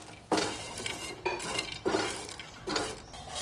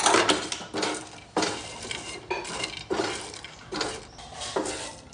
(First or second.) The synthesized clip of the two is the second